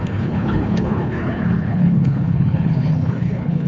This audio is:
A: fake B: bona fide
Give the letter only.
A